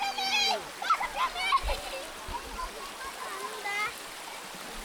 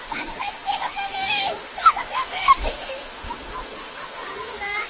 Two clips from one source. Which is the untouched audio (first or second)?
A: first